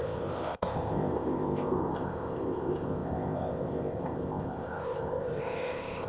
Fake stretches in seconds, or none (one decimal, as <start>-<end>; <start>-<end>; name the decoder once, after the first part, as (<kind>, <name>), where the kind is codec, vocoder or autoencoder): 0.0-6.1 (codec, ZipCodec)